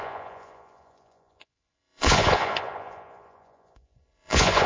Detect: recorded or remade remade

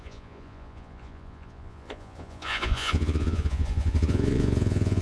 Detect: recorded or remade remade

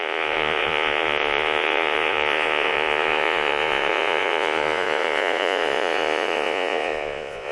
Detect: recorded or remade remade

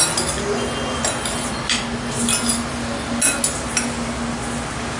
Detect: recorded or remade recorded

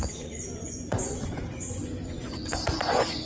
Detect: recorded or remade remade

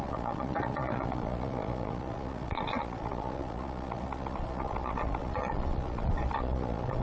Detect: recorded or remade remade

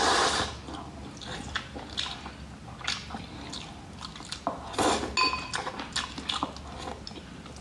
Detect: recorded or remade recorded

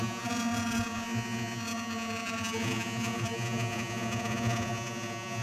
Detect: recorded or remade remade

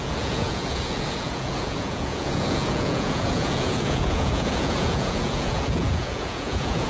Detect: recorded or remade remade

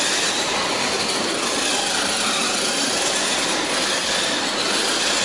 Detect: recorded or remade recorded